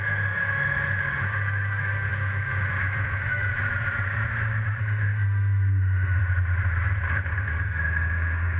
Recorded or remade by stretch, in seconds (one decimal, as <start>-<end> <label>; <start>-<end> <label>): 0.0-3.5 remade; 3.5-4.8 recorded; 4.8-6.2 remade; 6.2-7.1 recorded; 7.1-8.6 remade